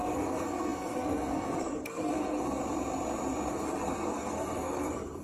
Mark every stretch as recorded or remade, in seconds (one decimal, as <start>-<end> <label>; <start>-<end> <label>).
0.0-2.6 remade; 2.6-3.5 recorded; 3.5-5.2 remade